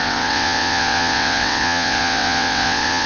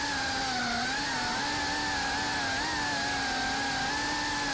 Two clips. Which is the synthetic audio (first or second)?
first